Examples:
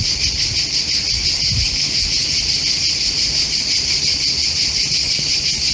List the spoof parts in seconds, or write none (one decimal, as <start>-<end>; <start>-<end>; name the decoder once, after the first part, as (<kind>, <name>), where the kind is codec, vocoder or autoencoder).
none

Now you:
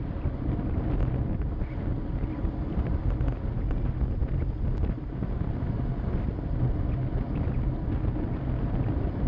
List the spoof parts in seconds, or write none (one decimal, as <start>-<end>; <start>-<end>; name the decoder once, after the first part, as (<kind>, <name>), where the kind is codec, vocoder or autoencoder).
none

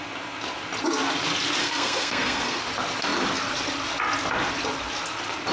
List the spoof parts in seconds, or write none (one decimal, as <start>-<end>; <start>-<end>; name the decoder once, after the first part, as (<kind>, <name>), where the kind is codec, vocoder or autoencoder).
1.6-2.6 (codec, SNAC)

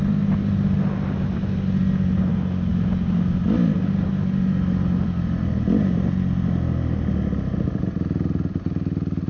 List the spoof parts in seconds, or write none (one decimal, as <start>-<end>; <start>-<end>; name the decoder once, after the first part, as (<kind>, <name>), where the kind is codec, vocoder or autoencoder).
none